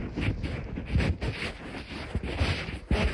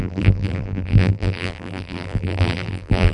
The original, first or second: first